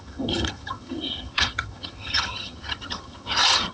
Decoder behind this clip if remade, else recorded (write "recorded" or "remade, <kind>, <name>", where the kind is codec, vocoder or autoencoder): remade, vocoder, HiFi-GAN